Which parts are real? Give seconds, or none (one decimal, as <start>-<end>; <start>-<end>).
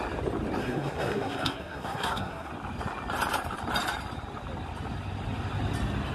0.0-0.6; 2.5-6.1